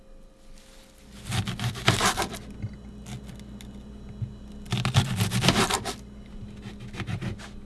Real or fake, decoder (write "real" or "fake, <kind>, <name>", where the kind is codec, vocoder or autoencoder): real